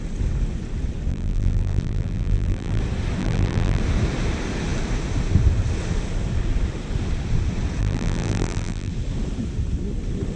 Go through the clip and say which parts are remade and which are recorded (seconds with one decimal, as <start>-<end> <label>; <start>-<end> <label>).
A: 0.0-1.1 recorded; 1.1-2.8 remade; 2.8-3.2 recorded; 3.2-3.8 remade; 3.8-7.8 recorded; 7.8-8.9 remade; 8.9-10.4 recorded